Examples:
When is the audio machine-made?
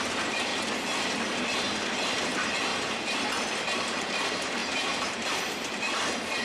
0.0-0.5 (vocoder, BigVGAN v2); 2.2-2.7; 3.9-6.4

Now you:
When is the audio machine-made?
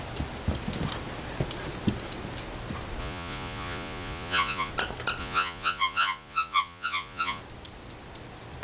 3.0-4.7 (vocoder, Vocos); 5.2-7.4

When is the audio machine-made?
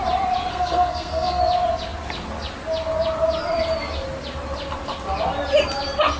0.5-1.4 (codec, SNAC)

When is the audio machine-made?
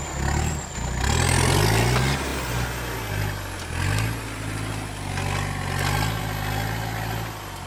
none